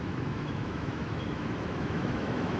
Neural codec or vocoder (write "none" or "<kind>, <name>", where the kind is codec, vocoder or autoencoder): autoencoder, DAC-VAE